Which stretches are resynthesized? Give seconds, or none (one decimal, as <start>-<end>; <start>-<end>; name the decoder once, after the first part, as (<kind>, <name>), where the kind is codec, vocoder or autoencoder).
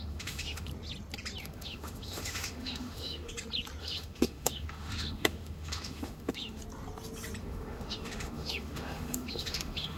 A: 0.0-0.7 (autoencoder, DAC-VAE); 1.4-3.3; 3.8-6.6; 7.4-10.0